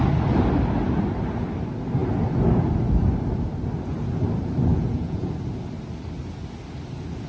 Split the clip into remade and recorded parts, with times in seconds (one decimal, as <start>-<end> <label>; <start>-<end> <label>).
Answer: 0.0-4.7 recorded; 4.7-5.3 remade; 5.3-7.3 recorded